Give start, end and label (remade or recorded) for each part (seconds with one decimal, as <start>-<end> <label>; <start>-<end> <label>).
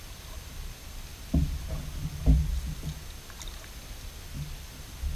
0.0-5.2 recorded